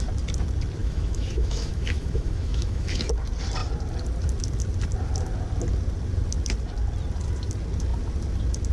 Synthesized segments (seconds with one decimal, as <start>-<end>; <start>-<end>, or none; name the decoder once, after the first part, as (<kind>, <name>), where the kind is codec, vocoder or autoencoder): 0.8-3.1 (autoencoder, DAC-VAE)